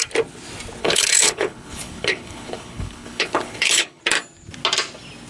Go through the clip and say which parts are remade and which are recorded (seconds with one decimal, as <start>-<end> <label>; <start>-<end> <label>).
0.0-0.8 recorded; 0.8-4.0 remade; 4.0-5.3 recorded